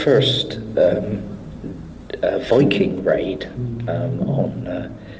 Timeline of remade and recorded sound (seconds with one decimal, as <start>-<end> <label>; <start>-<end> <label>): 0.0-5.2 recorded

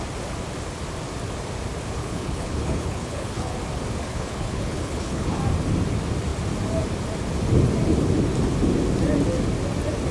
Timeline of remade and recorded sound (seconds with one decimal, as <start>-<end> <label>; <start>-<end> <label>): 0.0-2.0 recorded; 2.0-3.5 remade; 3.5-4.1 recorded; 4.1-5.4 remade; 5.4-10.1 recorded

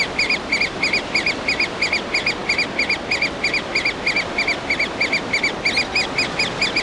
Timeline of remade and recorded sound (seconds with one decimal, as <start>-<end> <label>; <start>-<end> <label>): 0.0-6.8 recorded

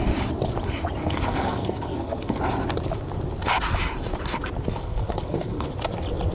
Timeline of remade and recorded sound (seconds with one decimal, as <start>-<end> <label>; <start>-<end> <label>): 0.0-1.0 recorded; 1.0-2.4 remade; 2.4-4.8 recorded; 4.8-5.7 remade; 5.7-6.3 recorded

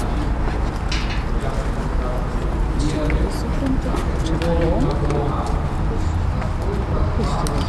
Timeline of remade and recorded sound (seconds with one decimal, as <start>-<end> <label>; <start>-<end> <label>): 0.0-7.7 recorded